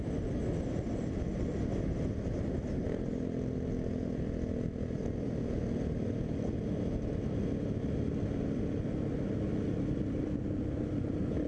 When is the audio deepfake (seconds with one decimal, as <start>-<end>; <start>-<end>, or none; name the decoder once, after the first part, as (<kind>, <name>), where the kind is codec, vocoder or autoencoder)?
none